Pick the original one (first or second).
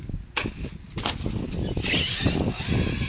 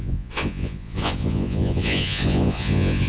first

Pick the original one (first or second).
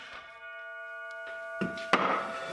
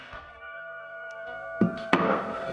first